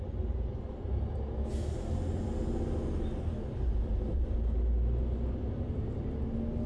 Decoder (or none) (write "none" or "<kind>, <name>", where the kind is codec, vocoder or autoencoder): none